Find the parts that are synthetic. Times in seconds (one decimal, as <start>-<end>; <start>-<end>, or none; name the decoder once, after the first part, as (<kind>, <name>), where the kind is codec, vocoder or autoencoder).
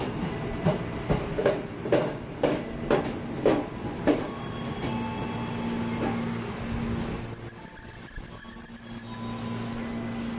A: none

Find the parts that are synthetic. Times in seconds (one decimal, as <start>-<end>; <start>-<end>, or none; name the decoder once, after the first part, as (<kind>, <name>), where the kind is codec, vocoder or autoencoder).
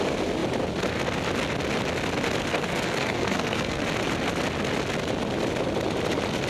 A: 2.5-3.8 (codec, SNAC)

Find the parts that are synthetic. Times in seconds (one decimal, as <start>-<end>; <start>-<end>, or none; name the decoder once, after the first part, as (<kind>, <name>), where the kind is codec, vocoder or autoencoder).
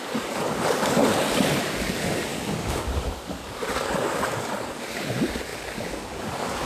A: 0.0-1.0 (codec, DAC); 1.6-6.7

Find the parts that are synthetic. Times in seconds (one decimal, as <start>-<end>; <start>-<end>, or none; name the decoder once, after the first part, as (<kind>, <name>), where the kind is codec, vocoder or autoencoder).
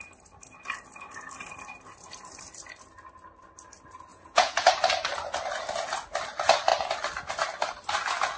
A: 4.1-4.7 (vocoder, Vocos)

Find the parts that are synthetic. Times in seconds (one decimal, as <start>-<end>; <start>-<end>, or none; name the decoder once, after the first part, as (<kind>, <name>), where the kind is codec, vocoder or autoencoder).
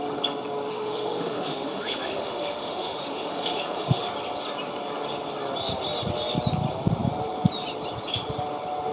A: 0.7-4.1 (autoencoder, DAC-VAE)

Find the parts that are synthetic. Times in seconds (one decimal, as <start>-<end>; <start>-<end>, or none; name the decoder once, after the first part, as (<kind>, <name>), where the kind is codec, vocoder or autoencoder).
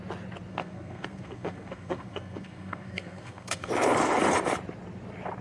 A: 0.5-3.7 (codec, SNAC)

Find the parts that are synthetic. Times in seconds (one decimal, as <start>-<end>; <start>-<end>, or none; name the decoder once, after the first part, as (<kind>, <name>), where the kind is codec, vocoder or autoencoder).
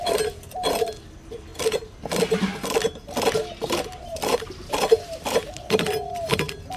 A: 0.0-1.5 (vocoder, BigVGAN v2); 4.1-6.8